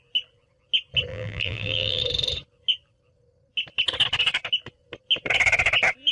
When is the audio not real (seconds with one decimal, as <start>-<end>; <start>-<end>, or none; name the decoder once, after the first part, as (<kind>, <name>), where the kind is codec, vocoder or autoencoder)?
1.1-2.0 (vocoder, BigVGAN v2)